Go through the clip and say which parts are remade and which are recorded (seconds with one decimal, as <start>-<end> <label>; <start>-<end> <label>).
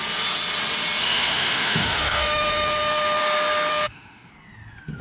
0.0-1.0 recorded; 1.0-3.2 remade; 3.2-3.7 recorded; 3.7-4.3 remade; 4.3-5.0 recorded